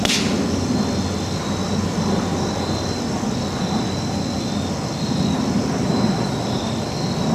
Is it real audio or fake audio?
real